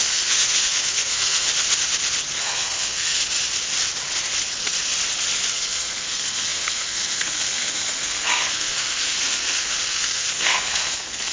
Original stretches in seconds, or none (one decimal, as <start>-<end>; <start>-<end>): 1.5-2.4; 3.2-5.5

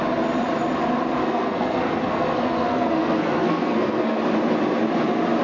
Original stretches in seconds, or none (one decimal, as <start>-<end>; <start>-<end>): 0.0-1.2; 4.2-5.4